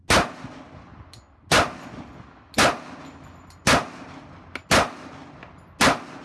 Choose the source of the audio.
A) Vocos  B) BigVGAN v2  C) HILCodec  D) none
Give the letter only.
D